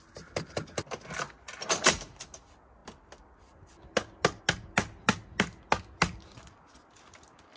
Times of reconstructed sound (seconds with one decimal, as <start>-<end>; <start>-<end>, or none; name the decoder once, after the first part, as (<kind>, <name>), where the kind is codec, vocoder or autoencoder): none